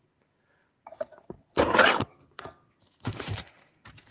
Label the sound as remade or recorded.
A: remade